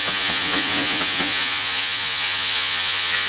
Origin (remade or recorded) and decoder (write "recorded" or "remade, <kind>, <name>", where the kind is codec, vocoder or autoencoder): remade, vocoder, Vocos